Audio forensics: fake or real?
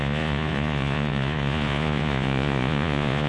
fake